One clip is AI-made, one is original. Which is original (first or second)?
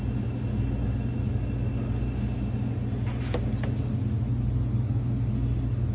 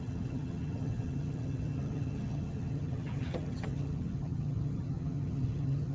first